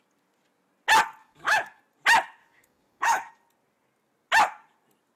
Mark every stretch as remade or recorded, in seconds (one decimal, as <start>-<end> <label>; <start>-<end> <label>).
0.0-1.2 recorded; 1.2-1.8 remade; 1.8-2.4 recorded; 2.4-3.3 remade; 3.3-5.2 recorded